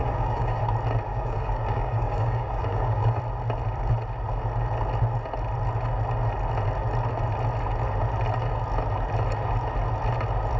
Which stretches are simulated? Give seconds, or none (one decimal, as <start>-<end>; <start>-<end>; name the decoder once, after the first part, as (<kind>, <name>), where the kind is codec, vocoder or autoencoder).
0.0-0.6 (codec, DAC); 1.1-3.2